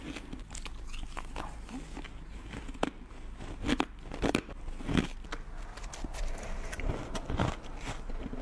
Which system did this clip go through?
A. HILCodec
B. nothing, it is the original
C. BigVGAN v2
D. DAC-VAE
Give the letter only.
B